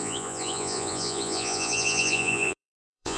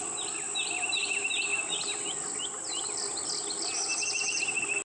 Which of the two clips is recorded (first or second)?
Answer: second